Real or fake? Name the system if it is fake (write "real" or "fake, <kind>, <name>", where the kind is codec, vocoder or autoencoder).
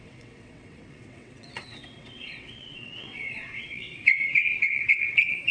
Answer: fake, vocoder, WaveNeXt